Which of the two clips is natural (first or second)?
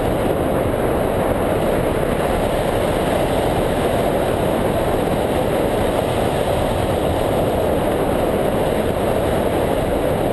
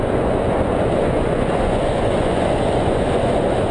first